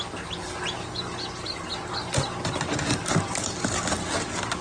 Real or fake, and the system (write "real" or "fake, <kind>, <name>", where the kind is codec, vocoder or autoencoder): real